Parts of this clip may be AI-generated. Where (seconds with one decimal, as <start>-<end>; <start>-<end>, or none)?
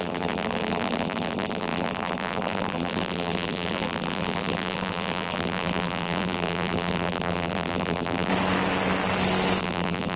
0.0-8.3; 9.6-10.2